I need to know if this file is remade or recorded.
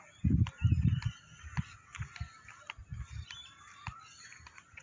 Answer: recorded